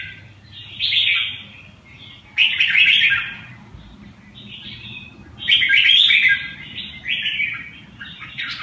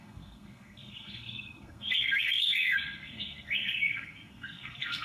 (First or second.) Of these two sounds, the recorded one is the first